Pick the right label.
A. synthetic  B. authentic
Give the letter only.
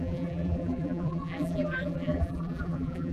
A